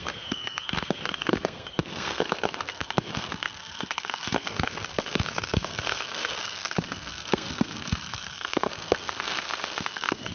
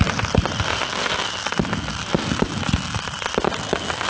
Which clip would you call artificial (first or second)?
first